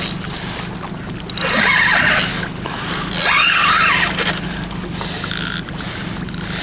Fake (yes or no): no